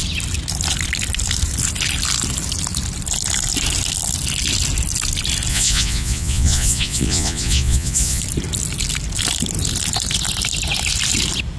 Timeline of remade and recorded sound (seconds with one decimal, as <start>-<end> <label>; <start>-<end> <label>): 0.0-5.5 recorded; 5.5-8.2 remade; 8.2-11.6 recorded